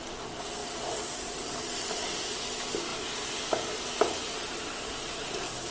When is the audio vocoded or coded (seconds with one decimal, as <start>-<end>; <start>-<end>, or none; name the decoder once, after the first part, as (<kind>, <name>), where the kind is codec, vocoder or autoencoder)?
none